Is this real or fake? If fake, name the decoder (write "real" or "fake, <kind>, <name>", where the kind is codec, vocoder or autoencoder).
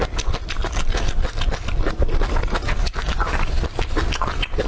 real